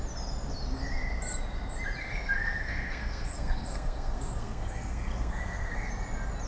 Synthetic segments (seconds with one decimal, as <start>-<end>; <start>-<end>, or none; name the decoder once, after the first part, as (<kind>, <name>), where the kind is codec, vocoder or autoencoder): 2.0-5.9 (codec, SNAC)